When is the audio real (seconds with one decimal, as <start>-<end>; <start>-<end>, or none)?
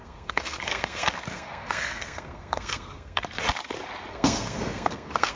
3.2-4.1